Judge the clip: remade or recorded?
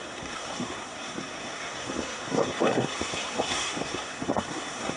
remade